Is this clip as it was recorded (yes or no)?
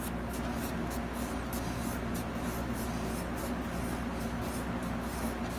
yes